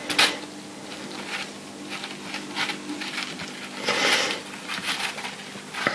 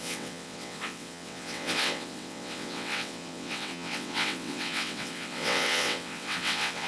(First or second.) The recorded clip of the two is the first